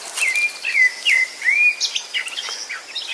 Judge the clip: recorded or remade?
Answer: recorded